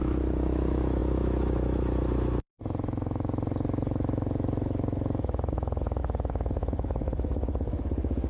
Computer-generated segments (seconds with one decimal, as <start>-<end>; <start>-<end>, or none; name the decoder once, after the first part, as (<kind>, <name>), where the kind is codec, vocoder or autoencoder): 0.0-8.3 (autoencoder, DAC-VAE)